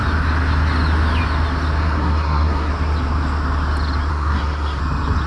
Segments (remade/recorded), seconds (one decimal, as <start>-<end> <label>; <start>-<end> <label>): 0.0-1.8 recorded; 1.8-2.7 remade; 2.7-4.1 recorded; 4.1-4.8 remade; 4.8-5.3 recorded